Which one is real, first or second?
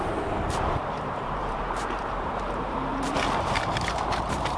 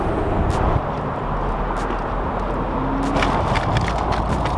second